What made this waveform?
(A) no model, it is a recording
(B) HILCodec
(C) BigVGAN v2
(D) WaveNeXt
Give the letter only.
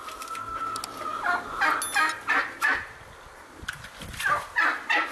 A